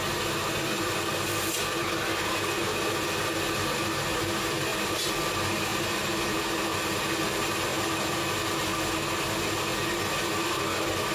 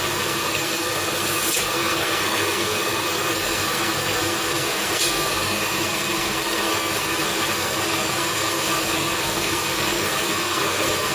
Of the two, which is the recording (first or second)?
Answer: first